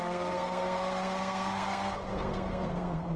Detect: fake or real fake